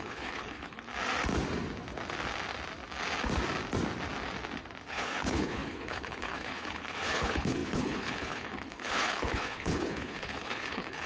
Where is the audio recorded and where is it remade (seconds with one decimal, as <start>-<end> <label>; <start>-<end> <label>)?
0.0-0.9 remade; 0.9-4.9 recorded; 4.9-11.1 remade